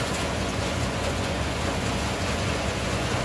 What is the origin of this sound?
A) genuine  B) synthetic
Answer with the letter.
B